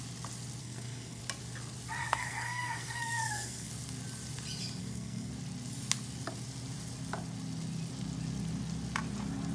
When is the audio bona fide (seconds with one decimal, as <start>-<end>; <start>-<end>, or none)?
0.0-0.6; 1.2-2.0; 3.7-4.8; 5.3-9.5